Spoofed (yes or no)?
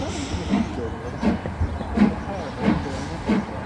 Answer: no